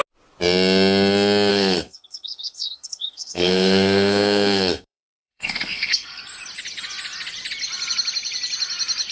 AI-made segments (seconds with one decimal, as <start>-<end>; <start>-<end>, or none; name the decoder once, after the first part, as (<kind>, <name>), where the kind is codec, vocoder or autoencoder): 1.5-6.2 (codec, SNAC)